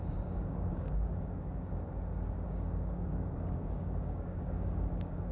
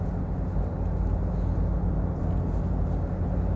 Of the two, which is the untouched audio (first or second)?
second